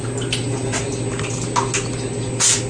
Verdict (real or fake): real